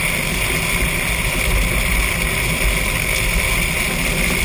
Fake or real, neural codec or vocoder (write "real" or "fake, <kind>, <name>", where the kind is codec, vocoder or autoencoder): real